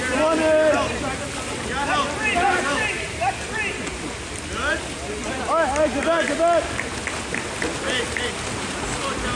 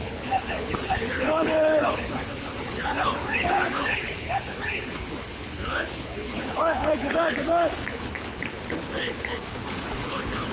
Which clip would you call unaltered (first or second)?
first